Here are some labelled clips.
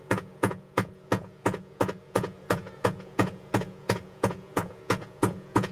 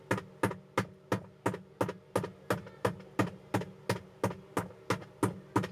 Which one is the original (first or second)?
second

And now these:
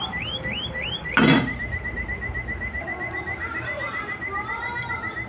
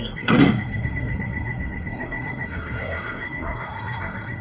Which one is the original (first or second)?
first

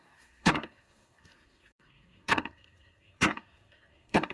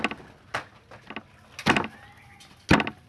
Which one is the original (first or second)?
second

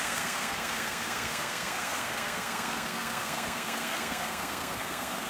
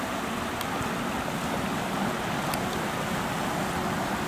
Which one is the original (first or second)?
second